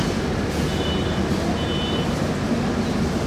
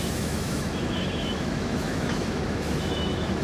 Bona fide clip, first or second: first